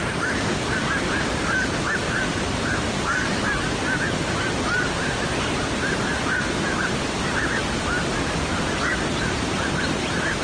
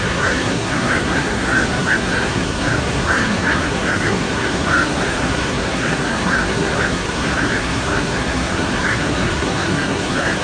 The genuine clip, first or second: first